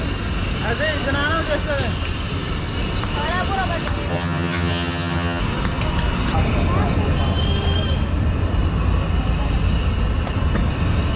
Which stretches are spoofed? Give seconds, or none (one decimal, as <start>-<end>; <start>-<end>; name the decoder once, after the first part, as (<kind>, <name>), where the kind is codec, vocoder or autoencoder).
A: 4.1-5.4 (vocoder, HiFi-GAN)